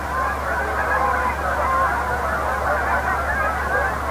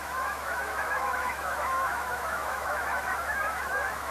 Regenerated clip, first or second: second